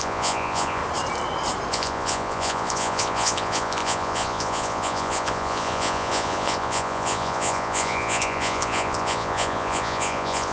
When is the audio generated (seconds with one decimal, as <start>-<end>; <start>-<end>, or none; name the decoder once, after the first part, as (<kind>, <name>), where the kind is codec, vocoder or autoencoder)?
0.0-0.8 (vocoder, Vocos); 1.7-10.5